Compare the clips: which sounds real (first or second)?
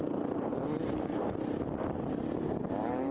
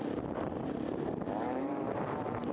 first